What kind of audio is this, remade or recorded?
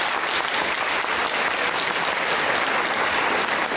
recorded